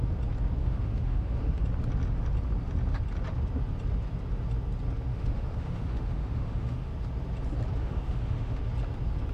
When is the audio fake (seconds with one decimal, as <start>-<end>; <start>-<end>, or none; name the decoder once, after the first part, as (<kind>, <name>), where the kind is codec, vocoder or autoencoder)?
0.6-1.6 (autoencoder, DAC-VAE); 5.1-6.9; 7.8-8.6